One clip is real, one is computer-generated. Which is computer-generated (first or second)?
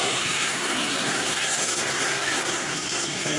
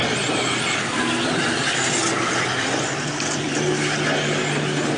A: first